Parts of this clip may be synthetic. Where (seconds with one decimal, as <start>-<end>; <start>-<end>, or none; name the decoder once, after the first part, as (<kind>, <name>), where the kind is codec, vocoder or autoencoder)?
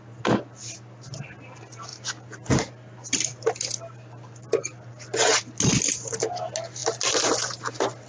none